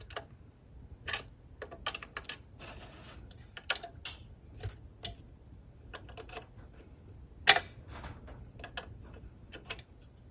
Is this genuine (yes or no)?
yes